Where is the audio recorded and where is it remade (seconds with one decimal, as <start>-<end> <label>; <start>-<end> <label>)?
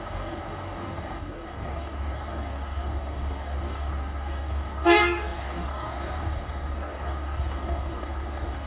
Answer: 0.0-8.7 remade